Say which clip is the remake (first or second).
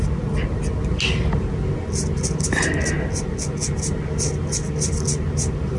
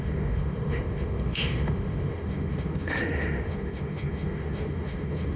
second